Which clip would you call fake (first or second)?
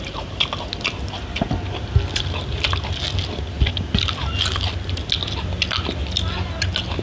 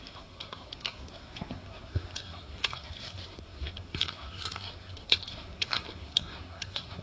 second